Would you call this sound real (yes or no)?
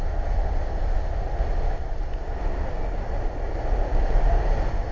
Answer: yes